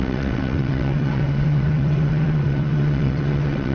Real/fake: fake